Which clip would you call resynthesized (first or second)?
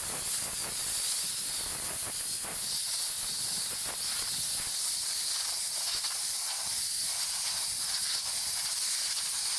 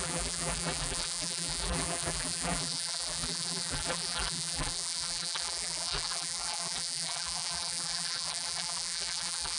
second